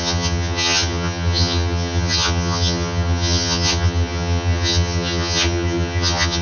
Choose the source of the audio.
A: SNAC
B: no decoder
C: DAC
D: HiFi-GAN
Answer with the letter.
D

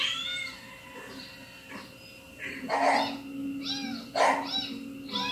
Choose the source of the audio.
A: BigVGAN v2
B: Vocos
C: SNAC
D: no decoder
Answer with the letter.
D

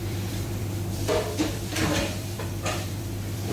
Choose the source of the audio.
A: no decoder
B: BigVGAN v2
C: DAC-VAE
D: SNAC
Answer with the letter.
B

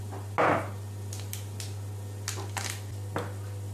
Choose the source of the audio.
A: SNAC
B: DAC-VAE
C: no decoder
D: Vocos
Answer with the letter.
C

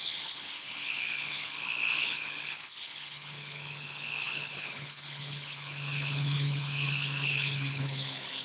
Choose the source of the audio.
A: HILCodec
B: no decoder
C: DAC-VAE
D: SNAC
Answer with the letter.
A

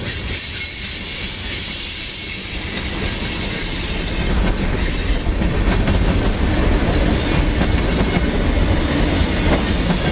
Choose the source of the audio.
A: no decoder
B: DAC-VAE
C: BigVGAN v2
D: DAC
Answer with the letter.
A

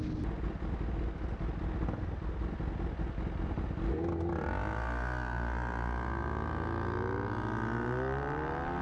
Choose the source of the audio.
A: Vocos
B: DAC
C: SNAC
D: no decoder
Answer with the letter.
D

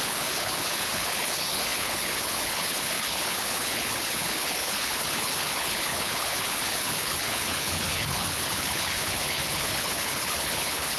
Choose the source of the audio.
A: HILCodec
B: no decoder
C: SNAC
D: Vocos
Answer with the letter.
A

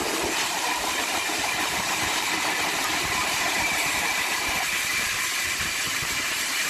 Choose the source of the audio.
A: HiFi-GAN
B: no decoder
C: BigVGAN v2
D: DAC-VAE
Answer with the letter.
C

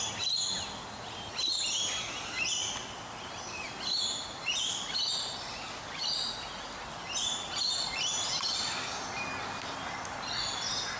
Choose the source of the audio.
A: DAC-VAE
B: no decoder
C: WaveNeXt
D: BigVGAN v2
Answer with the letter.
B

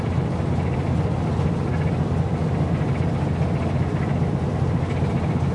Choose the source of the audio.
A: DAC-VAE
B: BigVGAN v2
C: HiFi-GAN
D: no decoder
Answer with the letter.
D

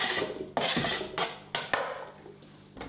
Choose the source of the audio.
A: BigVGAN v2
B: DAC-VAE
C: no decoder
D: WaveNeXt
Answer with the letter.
C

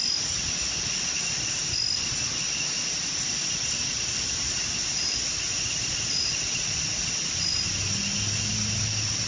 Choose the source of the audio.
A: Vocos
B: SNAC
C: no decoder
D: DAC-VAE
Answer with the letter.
C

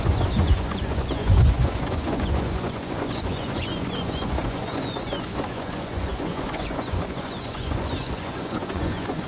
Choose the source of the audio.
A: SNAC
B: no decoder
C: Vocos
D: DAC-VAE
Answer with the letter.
C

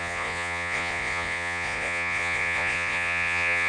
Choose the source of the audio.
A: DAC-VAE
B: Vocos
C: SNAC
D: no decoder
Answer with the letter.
B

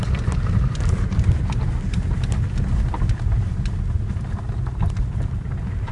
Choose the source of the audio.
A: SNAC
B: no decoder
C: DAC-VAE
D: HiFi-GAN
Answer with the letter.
B